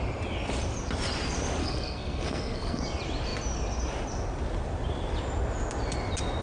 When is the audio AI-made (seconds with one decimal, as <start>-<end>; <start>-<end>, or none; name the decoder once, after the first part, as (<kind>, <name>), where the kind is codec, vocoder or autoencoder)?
1.6-2.8 (codec, SNAC)

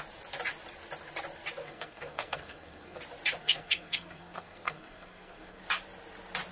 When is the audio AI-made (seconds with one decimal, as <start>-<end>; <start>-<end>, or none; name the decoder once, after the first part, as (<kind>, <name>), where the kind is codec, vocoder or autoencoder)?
1.6-3.0 (codec, SNAC); 3.4-5.6

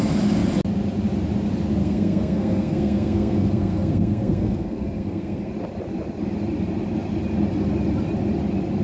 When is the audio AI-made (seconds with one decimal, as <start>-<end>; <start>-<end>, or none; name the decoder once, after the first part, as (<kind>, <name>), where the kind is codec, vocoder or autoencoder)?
1.8-5.5 (codec, SNAC)

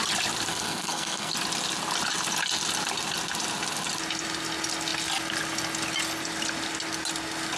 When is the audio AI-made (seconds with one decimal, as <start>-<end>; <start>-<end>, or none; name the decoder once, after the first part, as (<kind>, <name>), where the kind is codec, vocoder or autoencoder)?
0.5-1.3 (codec, SNAC)

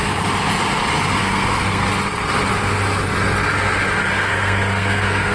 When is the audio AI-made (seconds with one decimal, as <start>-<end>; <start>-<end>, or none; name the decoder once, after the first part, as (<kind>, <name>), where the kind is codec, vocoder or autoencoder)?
1.2-1.8 (codec, SNAC); 4.1-5.3

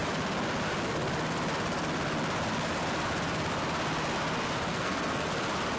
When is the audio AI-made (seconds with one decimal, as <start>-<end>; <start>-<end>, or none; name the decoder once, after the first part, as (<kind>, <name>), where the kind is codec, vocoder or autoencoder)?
4.7-5.3 (codec, SNAC)